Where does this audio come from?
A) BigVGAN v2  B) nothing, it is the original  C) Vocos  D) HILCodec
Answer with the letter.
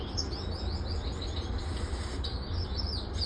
B